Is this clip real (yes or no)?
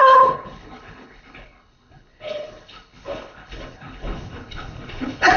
no